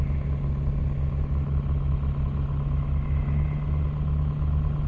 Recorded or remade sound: recorded